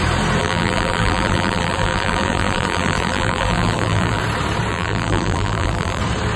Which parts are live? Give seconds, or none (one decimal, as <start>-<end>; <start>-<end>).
0.0-0.4; 4.2-4.7; 6.0-6.4